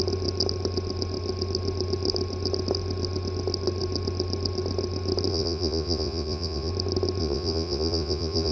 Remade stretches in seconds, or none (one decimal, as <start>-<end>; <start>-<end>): 5.3-6.7; 7.2-8.5